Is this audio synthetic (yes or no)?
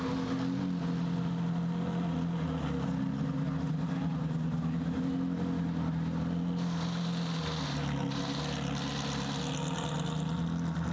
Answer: no